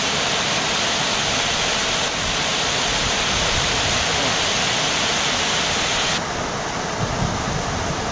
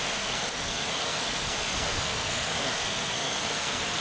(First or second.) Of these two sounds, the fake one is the second